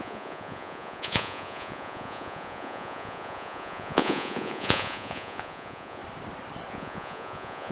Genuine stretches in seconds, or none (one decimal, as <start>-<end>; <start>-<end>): 6.0-6.7